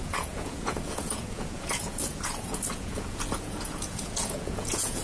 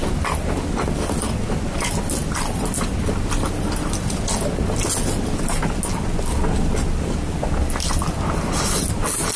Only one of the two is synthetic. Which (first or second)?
first